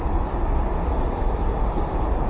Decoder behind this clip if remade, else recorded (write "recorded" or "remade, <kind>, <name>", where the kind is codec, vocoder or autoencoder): recorded